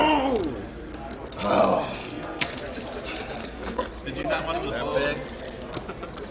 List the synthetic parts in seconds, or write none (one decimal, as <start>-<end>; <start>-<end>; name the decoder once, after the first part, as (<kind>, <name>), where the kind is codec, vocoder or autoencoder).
1.9-2.6 (codec, SNAC); 3.4-3.9